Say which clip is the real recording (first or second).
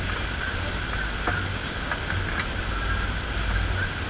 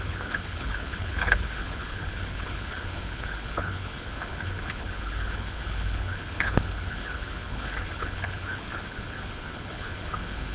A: first